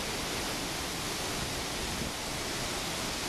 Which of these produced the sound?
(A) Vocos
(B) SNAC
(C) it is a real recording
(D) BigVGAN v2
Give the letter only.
C